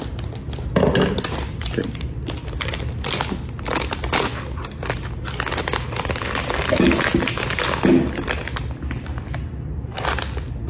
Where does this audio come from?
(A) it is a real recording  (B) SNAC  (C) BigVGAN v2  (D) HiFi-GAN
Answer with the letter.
A